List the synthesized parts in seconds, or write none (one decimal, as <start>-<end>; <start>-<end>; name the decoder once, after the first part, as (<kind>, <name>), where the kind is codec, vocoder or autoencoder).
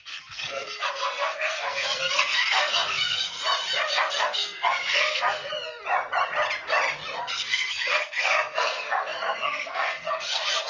0.0-3.4 (codec, SNAC); 3.9-5.5; 7.2-10.7